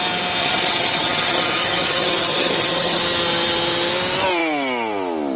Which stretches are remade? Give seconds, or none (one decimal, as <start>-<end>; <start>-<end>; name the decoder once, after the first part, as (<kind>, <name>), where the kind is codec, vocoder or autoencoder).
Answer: 0.4-3.0 (vocoder, HiFi-GAN)